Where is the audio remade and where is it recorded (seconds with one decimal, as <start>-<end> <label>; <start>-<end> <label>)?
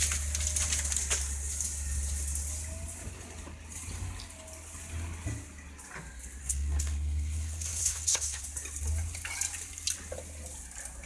0.0-6.4 recorded; 6.4-8.4 remade; 8.4-11.1 recorded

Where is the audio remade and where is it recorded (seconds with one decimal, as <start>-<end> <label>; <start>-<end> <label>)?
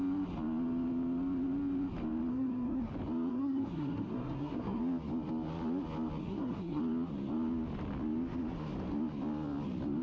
0.0-2.3 recorded; 2.3-2.9 remade; 2.9-3.3 recorded; 3.3-4.8 remade; 4.8-6.2 recorded; 6.2-6.8 remade; 6.8-10.0 recorded